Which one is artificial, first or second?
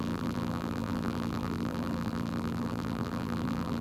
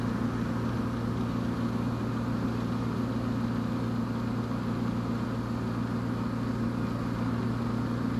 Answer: first